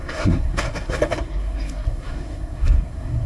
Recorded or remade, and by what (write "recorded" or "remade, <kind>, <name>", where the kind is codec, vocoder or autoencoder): remade, codec, SNAC